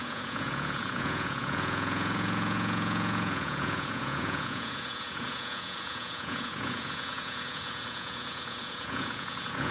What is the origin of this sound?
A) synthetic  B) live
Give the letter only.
A